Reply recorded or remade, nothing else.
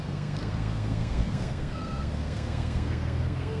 remade